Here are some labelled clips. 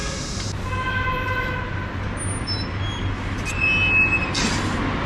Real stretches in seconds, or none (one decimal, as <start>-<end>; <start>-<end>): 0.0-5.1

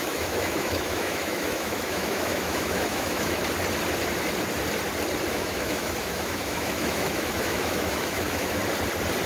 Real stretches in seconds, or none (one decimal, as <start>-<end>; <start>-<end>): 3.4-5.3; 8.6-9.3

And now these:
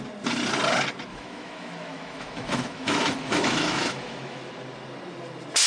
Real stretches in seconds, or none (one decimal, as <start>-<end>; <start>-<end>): 0.0-1.1; 4.5-5.7